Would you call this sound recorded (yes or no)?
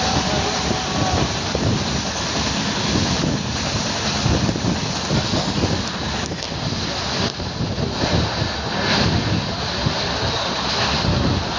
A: yes